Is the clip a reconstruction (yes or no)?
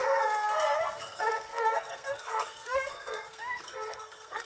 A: yes